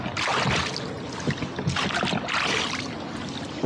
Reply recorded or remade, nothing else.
recorded